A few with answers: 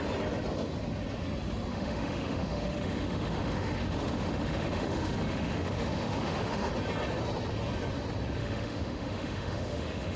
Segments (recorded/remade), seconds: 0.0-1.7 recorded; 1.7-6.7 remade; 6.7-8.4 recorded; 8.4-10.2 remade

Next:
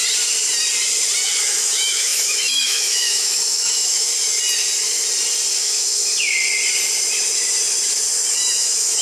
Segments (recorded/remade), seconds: 0.0-1.4 recorded; 1.4-4.1 remade; 4.1-5.6 recorded; 5.6-6.0 remade; 6.0-8.5 recorded; 8.5-9.0 remade

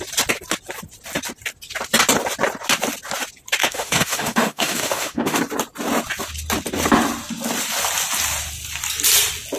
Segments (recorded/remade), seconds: 0.0-3.6 recorded; 3.6-5.4 remade; 5.4-9.6 recorded

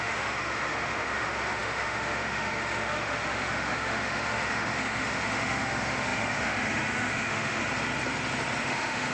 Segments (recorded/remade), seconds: 0.0-7.6 remade; 7.6-8.6 recorded; 8.6-9.1 remade

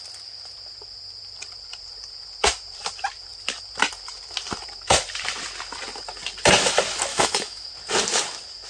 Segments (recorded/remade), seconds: 0.0-7.1 recorded; 7.1-7.7 remade; 7.7-8.7 recorded

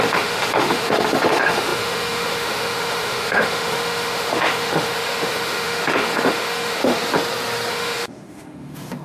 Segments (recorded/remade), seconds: 0.0-7.0 remade; 7.0-7.7 recorded; 7.7-9.0 remade